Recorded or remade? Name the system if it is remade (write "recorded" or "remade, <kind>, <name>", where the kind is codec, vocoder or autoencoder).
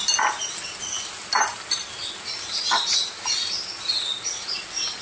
recorded